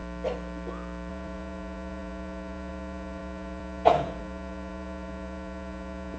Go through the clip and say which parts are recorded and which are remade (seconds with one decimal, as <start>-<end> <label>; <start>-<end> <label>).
0.0-1.1 recorded; 1.1-6.2 remade